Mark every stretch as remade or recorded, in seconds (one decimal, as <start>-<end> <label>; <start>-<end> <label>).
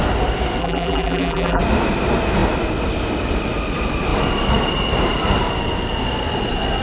0.0-0.6 recorded; 0.6-1.6 remade; 1.6-6.8 recorded